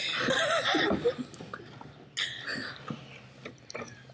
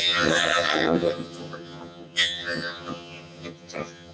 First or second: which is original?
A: first